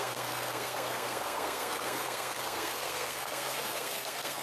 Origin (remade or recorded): remade